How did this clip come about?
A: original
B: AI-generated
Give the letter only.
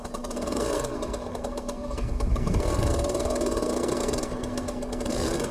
B